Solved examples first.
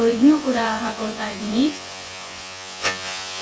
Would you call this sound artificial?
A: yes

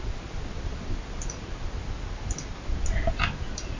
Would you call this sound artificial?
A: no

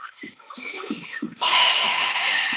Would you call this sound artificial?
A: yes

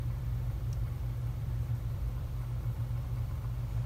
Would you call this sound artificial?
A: yes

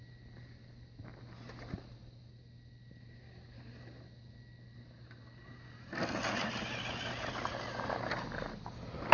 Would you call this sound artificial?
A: no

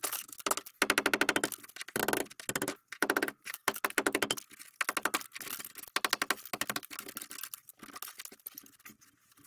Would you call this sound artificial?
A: no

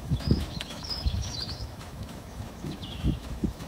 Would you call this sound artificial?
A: yes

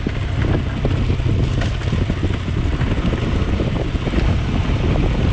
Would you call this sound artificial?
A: no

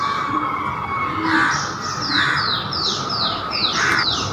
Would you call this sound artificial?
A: no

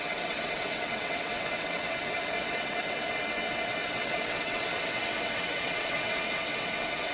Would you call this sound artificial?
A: yes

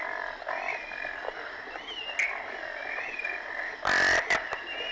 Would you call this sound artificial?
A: no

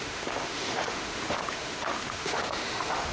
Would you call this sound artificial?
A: yes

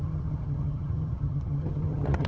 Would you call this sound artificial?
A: yes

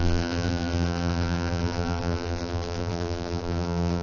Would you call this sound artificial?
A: yes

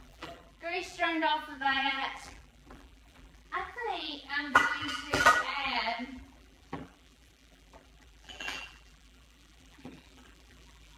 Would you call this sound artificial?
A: yes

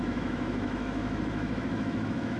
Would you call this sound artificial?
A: yes